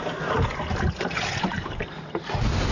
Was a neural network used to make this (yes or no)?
no